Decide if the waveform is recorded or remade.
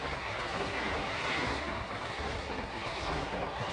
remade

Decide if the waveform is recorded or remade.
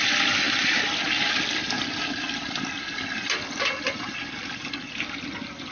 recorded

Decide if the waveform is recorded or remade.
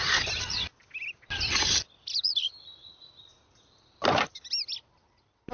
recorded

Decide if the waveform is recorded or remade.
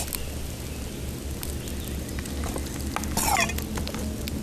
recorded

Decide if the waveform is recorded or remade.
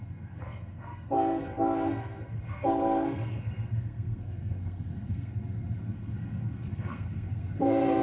remade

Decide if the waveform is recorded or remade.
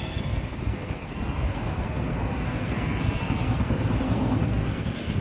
remade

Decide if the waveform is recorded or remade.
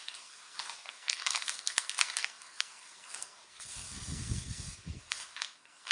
remade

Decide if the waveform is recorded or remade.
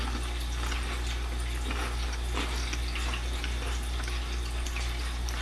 recorded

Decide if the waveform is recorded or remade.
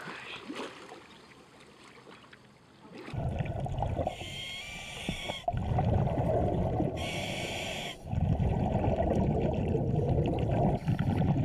recorded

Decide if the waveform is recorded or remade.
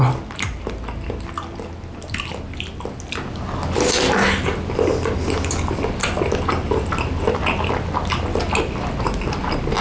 recorded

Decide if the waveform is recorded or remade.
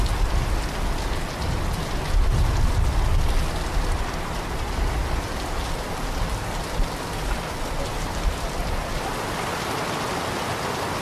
recorded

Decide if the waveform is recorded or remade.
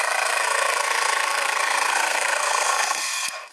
remade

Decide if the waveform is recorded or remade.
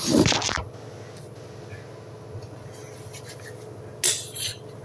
recorded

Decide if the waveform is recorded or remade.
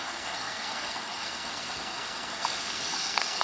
remade